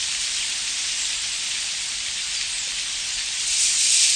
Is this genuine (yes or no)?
yes